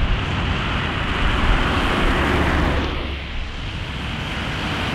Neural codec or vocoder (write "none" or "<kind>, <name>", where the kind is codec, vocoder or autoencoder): none